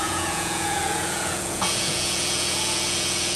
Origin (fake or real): fake